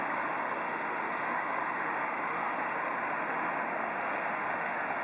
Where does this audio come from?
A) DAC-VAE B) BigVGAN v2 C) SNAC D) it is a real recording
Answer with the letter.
A